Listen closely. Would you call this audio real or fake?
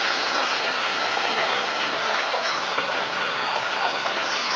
fake